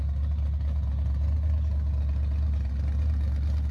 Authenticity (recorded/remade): recorded